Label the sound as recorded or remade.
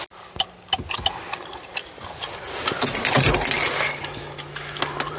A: recorded